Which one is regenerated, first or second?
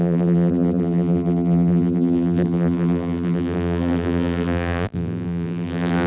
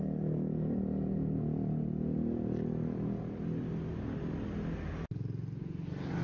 first